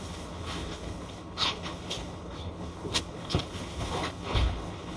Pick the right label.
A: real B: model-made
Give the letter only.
B